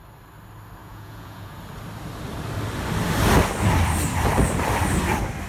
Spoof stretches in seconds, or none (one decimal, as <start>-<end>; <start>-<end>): 0.8-1.6